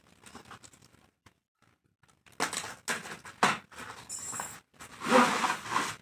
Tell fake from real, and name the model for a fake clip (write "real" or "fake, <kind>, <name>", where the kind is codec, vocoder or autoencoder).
real